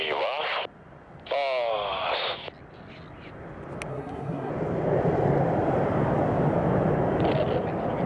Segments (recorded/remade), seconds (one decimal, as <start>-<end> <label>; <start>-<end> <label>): 0.0-3.9 recorded; 3.9-4.5 remade; 4.5-8.1 recorded